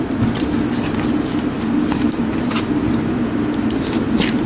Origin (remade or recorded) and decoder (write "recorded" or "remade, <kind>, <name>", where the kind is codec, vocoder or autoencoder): remade, vocoder, BigVGAN v2